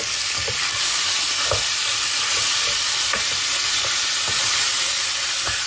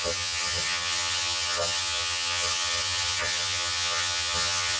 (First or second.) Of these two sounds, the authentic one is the first